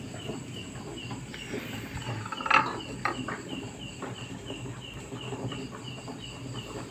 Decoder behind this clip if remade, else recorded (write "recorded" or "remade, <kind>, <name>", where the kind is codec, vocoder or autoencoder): recorded